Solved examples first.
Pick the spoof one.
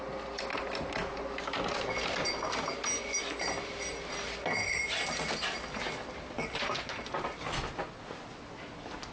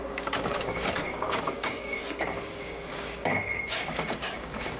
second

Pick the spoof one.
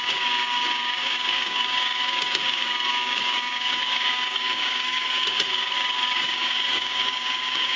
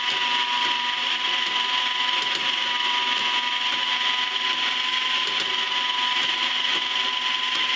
first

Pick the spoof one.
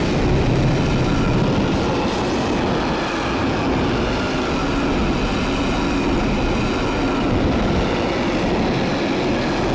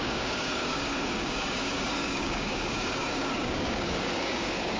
second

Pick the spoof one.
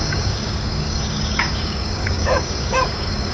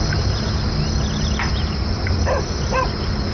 first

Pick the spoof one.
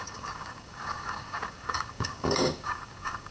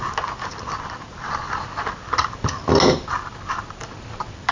first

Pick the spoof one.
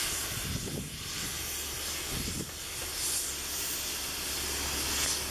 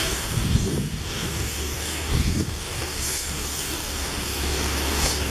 second